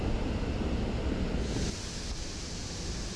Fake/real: real